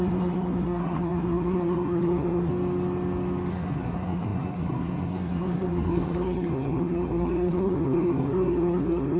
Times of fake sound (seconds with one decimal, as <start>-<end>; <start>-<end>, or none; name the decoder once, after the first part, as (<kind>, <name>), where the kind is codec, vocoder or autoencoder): 0.0-2.5 (codec, SNAC); 3.5-9.2